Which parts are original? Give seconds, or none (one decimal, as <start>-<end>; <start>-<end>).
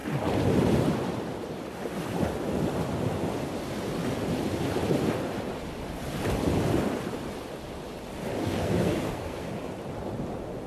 0.0-8.4; 9.5-10.7